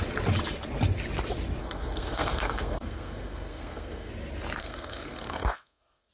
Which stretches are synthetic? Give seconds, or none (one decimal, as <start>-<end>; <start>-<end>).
1.6-4.1; 4.6-6.1

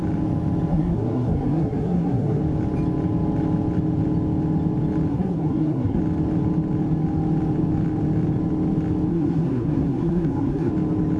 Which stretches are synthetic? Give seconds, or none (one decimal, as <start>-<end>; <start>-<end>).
0.7-2.4; 5.1-6.0; 9.1-10.7

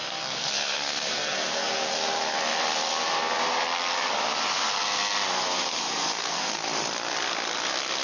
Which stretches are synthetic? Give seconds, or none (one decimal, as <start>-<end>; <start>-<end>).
0.0-1.7; 6.0-6.6

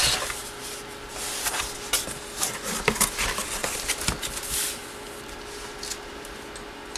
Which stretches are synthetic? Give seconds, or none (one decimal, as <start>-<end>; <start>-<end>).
0.4-1.5

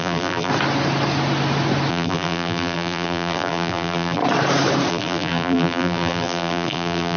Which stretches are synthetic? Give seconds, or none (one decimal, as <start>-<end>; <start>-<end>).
0.0-0.5; 1.9-4.2; 4.9-7.2